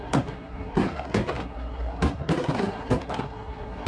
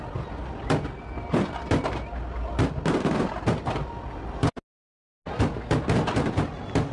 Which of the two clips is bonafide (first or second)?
second